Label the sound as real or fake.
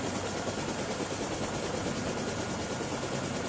real